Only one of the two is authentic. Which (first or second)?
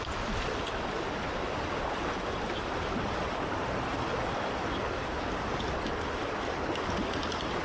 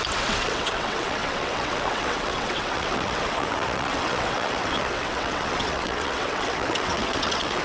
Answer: first